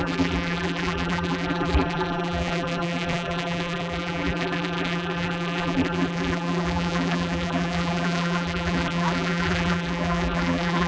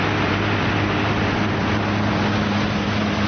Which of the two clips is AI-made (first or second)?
first